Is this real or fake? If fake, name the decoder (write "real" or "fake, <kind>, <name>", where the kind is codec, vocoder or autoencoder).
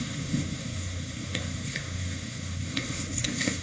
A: fake, codec, SNAC